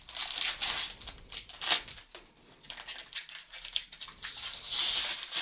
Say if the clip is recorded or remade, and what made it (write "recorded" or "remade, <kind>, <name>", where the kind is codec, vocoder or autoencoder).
recorded